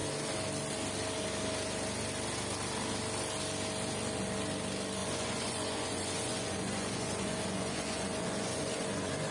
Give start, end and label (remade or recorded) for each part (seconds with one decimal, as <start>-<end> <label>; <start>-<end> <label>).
0.0-5.0 recorded; 5.0-9.3 remade